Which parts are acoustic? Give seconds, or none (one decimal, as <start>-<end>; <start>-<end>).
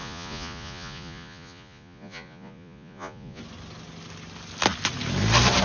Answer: 3.4-5.6